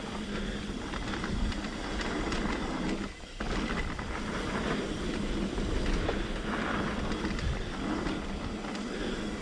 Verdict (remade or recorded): recorded